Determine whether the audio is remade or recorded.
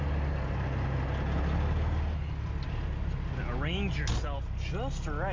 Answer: recorded